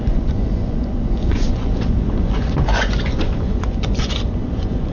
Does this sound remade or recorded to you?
remade